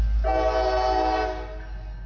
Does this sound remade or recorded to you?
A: recorded